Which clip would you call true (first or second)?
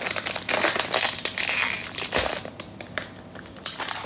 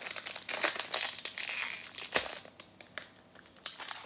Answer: second